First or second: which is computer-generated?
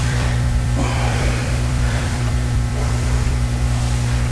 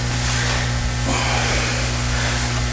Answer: first